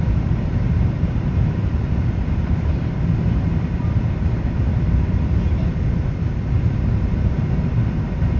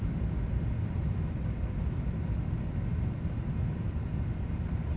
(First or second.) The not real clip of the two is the first